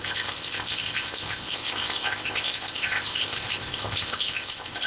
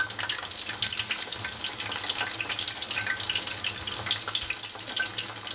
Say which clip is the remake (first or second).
first